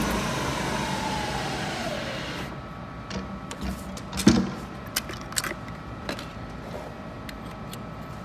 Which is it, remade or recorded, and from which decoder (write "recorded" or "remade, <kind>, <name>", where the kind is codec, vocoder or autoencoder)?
recorded